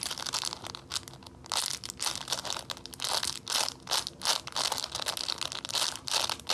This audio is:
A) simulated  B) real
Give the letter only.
B